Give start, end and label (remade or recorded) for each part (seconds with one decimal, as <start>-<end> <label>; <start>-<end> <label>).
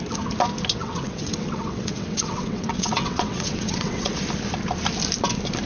0.0-0.8 recorded; 0.8-4.2 remade; 4.2-5.7 recorded